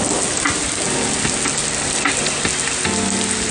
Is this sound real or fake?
real